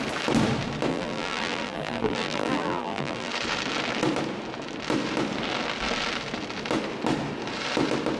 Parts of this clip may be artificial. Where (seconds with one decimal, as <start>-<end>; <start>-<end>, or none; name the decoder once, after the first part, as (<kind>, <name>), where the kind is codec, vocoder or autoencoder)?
0.9-3.3 (vocoder, BigVGAN v2)